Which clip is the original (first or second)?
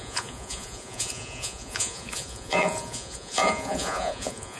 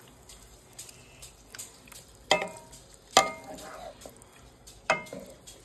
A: second